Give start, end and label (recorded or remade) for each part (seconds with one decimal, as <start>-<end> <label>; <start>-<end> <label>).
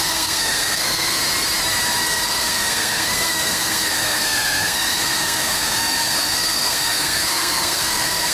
0.0-1.2 remade; 1.2-2.0 recorded; 2.0-8.3 remade